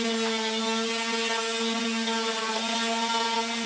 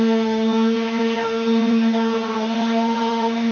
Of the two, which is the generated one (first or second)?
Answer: second